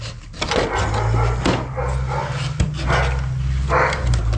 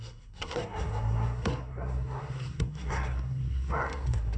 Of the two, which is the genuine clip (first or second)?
first